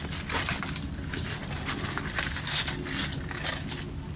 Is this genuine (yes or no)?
yes